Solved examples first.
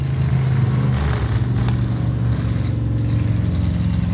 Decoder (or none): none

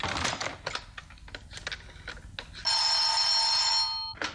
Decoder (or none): none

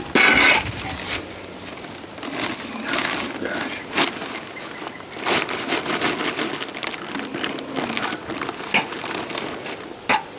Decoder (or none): none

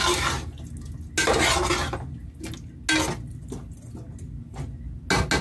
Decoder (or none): none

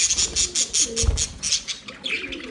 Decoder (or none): none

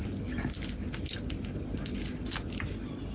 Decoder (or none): none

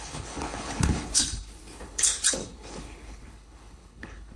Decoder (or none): codec, HILCodec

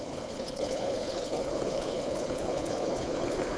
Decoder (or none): codec, HILCodec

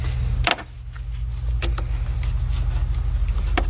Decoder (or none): none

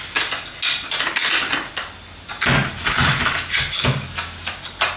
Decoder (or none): none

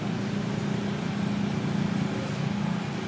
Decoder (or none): none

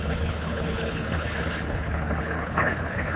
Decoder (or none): codec, HILCodec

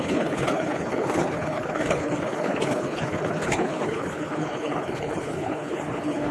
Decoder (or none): codec, HILCodec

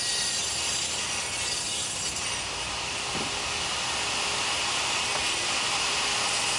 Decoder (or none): none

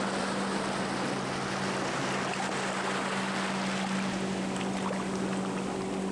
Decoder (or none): none